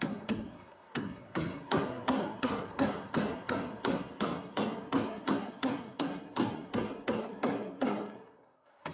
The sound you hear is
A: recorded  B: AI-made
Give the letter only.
B